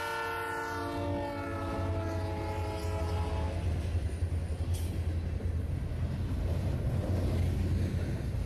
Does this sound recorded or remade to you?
recorded